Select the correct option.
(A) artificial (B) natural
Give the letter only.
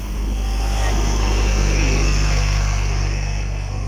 A